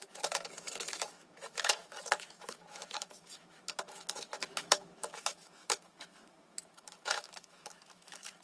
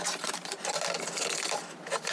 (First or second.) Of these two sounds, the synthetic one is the first